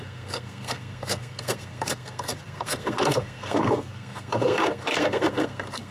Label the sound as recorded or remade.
remade